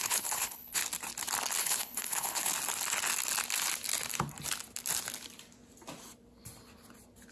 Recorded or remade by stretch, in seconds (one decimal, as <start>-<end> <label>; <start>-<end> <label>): 0.0-0.8 remade; 0.8-1.6 recorded; 1.6-2.5 remade; 2.5-7.3 recorded